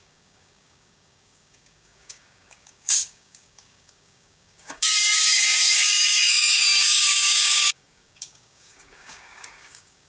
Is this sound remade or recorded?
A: remade